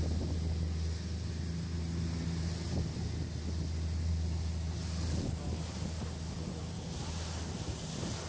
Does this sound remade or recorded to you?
recorded